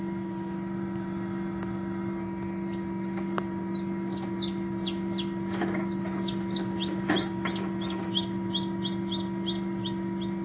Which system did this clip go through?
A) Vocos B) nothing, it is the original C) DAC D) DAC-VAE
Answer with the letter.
B